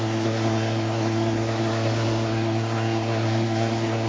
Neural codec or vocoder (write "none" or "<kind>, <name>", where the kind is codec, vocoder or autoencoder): codec, SNAC